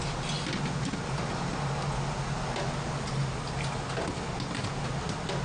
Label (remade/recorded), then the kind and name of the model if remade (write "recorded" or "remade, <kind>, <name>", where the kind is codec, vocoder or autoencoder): recorded